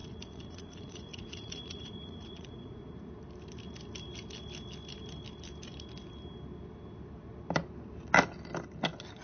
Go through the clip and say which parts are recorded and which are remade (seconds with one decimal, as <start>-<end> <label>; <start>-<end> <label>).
0.0-3.1 remade; 3.1-9.2 recorded